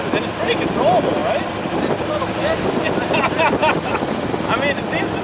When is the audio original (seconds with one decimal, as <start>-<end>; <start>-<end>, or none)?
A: 0.0-5.2